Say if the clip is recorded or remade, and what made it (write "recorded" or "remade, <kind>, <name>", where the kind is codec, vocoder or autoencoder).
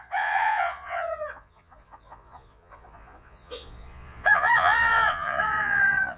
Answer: remade, vocoder, Vocos